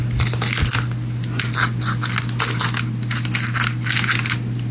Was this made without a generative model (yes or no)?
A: yes